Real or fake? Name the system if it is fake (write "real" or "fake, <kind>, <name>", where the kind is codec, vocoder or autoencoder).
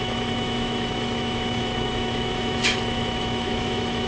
fake, autoencoder, DAC-VAE